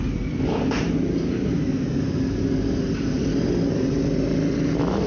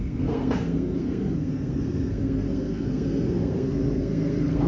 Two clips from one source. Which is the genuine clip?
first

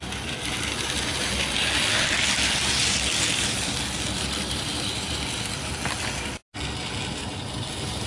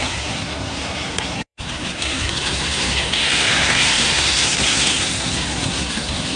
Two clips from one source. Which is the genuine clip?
first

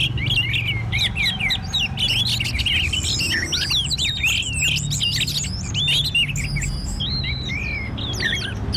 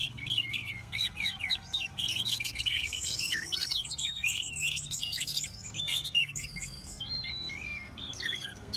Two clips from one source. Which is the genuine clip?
first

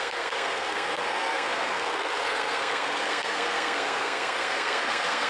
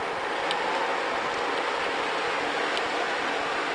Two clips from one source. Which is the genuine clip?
second